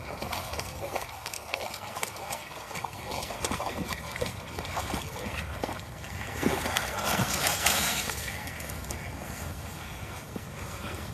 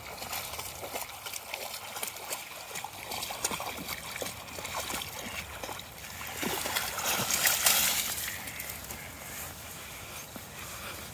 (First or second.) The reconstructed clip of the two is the first